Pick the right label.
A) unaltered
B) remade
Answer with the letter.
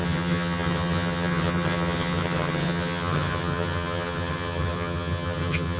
B